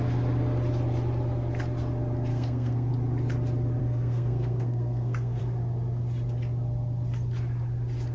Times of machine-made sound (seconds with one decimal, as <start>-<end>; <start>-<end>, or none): 2.3-2.9; 3.8-5.4